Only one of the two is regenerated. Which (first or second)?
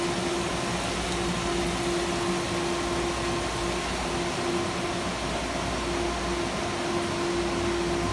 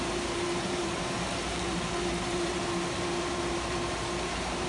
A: second